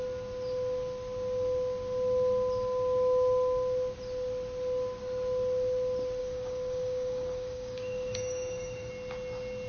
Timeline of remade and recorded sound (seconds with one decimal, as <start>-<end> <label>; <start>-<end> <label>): 0.0-6.2 recorded; 6.2-8.9 remade; 8.9-9.7 recorded